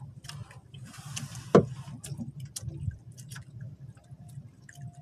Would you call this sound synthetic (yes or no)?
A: no